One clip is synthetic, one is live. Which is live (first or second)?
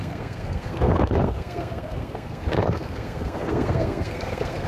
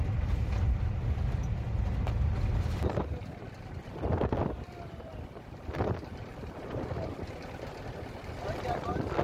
second